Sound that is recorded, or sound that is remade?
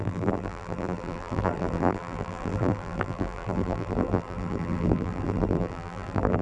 remade